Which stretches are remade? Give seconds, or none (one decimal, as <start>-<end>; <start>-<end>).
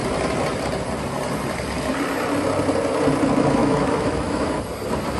3.6-4.5